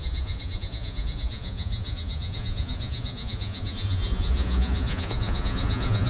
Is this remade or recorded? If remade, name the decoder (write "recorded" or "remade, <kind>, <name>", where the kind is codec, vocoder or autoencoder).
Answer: remade, vocoder, Vocos